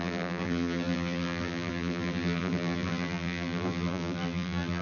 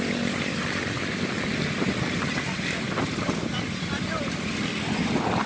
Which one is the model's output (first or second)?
first